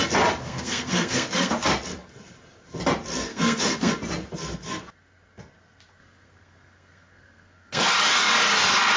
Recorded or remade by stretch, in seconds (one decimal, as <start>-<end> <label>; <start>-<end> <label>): 0.0-0.4 recorded; 0.4-1.5 remade; 1.5-3.3 recorded; 3.3-3.9 remade; 3.9-6.0 recorded; 6.0-7.8 remade; 7.8-9.0 recorded

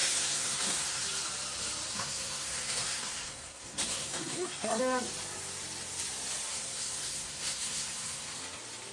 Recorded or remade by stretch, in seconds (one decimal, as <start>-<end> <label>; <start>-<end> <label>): 0.0-1.0 remade; 1.0-1.9 recorded; 1.9-4.8 remade; 4.8-6.5 recorded; 6.5-8.4 remade; 8.4-8.9 recorded

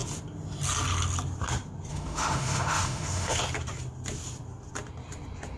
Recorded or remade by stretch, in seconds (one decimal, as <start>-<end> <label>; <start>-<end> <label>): 0.0-1.9 recorded; 1.9-3.4 remade; 3.4-5.6 recorded

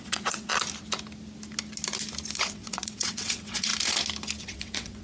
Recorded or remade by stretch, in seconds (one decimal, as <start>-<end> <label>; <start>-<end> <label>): 0.0-0.5 remade; 0.5-2.4 recorded; 2.4-3.7 remade; 3.7-4.4 recorded; 4.4-5.0 remade